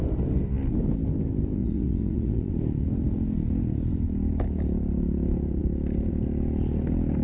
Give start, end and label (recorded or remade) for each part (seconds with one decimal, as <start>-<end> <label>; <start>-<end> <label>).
0.0-1.6 recorded; 1.6-2.5 remade; 2.5-7.2 recorded

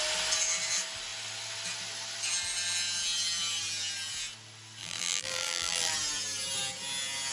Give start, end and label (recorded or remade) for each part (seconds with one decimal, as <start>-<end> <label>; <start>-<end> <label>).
0.0-4.8 recorded; 4.8-5.9 remade; 5.9-7.3 recorded